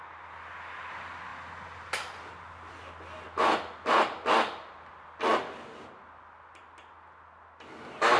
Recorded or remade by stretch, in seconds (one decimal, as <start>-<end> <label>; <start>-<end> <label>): 0.0-8.2 recorded